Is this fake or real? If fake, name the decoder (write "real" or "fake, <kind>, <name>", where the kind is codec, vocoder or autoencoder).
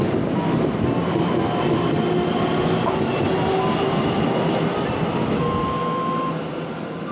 real